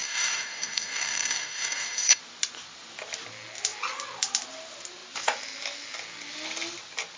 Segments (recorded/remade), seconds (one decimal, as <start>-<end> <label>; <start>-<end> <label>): 0.0-2.2 remade; 2.2-7.2 recorded